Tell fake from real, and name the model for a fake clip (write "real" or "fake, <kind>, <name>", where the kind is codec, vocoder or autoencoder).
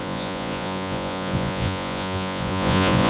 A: fake, vocoder, Vocos